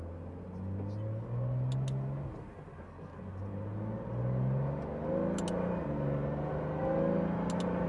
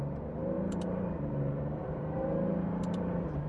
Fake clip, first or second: second